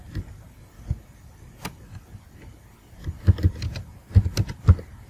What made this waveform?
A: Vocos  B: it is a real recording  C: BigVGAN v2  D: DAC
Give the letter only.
B